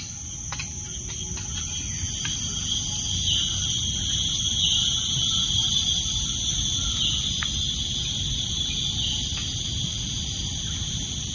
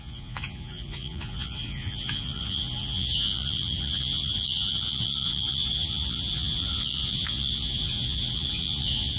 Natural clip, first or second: first